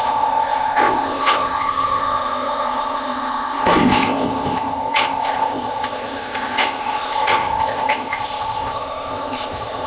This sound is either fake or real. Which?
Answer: fake